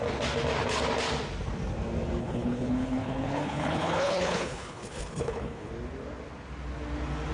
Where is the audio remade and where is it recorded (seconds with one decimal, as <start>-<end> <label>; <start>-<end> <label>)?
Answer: 0.0-2.2 recorded; 2.2-5.7 remade; 5.7-7.3 recorded